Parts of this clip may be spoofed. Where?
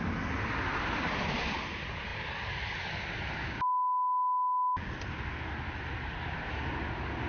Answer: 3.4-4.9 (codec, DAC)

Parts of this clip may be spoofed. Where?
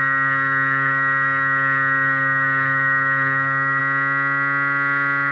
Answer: 0.0-3.8 (codec, DAC)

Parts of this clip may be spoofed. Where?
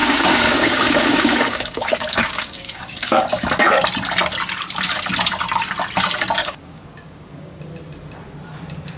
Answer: 0.0-3.2 (codec, DAC); 6.4-7.6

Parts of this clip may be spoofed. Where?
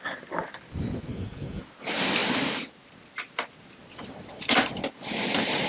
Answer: 1.1-1.6 (codec, DAC)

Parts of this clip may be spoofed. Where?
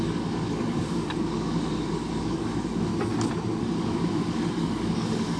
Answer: 0.0-2.9 (codec, DAC); 3.6-5.4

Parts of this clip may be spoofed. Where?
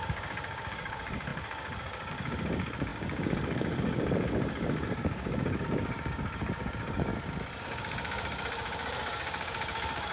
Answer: 0.0-7.1 (codec, DAC); 7.6-10.1